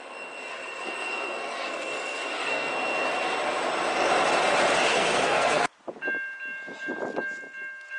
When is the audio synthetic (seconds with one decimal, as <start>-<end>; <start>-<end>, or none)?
0.5-2.7; 4.9-5.7